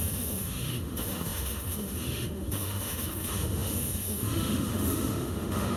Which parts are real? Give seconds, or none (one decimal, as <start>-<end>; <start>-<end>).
none